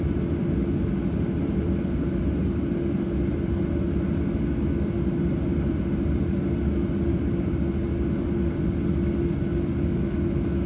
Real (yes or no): yes